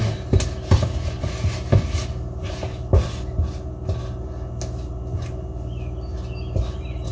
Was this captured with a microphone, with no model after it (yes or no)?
yes